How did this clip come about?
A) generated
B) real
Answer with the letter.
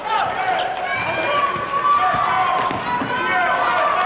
B